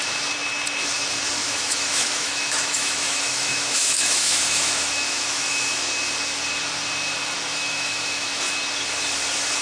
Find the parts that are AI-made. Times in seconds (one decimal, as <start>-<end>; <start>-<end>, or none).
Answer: 1.4-5.9; 7.5-8.4